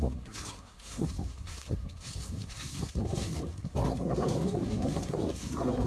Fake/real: fake